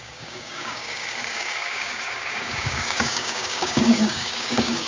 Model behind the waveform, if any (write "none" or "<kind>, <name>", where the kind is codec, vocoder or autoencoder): codec, DAC